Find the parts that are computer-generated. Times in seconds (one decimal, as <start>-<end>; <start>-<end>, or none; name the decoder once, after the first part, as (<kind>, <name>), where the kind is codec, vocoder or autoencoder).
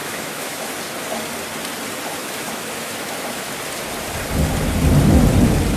0.0-0.7 (autoencoder, DAC-VAE); 2.2-3.5